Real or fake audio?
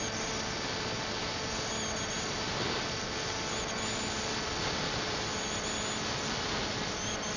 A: real